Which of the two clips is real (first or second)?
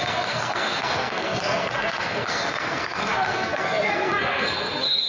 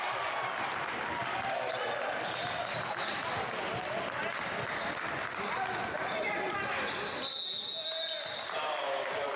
second